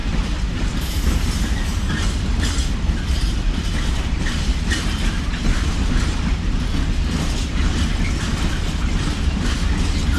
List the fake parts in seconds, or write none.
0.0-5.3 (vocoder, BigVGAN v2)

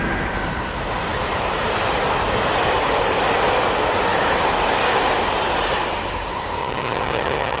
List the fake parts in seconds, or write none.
6.6-7.6 (vocoder, HiFi-GAN)

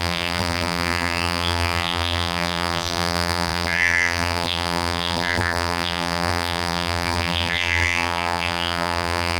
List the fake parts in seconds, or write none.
0.0-9.4 (vocoder, BigVGAN v2)

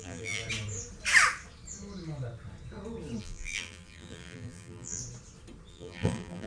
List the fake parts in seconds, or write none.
0.0-0.4 (vocoder, BigVGAN v2); 3.2-5.0; 5.7-6.5

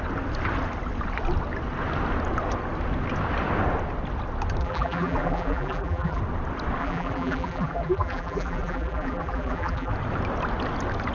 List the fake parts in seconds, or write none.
4.6-6.2 (vocoder, BigVGAN v2); 6.8-9.9